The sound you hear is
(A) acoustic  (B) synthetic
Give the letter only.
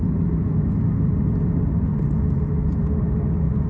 A